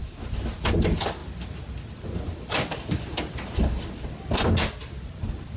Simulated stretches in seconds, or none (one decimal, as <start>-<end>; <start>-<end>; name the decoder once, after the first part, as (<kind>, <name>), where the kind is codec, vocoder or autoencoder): none